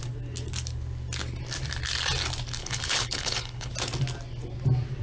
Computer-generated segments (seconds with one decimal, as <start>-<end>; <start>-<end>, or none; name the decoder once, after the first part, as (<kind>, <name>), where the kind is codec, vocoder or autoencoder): 2.6-3.7 (codec, HILCodec)